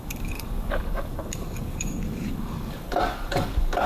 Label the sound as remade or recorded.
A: remade